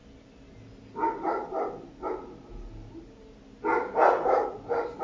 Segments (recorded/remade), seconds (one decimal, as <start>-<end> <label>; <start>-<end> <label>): 0.0-5.0 recorded